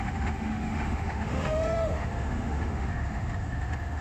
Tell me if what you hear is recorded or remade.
remade